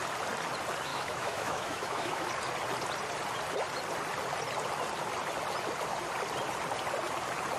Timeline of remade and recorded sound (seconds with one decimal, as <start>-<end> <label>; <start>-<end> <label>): 0.0-0.9 recorded; 0.9-2.3 remade; 2.3-7.6 recorded

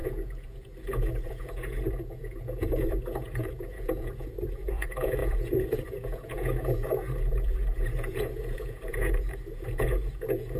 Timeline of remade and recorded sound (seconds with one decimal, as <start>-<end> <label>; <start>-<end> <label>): 0.0-10.6 remade

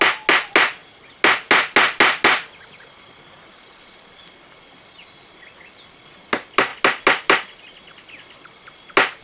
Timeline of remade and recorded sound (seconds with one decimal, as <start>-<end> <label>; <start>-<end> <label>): 0.0-9.2 recorded

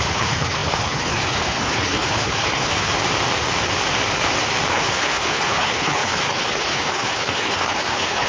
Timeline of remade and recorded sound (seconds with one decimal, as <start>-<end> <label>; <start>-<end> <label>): 0.0-2.9 remade; 2.9-4.7 recorded; 4.7-8.3 remade

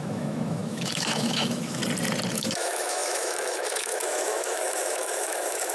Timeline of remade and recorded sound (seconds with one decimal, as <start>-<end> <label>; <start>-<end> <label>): 0.0-1.8 remade; 1.8-2.3 recorded; 2.3-5.7 remade